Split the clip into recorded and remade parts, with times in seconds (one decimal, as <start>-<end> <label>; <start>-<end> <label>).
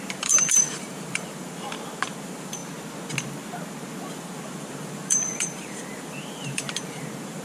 0.0-2.6 remade; 2.6-4.2 recorded; 4.2-7.4 remade